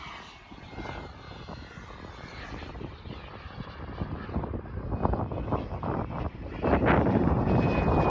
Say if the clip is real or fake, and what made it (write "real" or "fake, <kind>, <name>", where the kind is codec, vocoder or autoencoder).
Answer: real